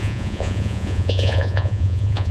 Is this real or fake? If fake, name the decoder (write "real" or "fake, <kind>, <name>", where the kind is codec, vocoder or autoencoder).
fake, vocoder, Vocos